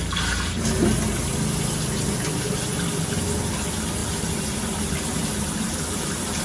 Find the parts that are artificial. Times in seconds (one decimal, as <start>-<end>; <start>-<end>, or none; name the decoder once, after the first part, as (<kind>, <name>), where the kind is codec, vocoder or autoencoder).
4.0-6.4 (vocoder, BigVGAN v2)